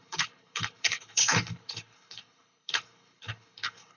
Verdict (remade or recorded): remade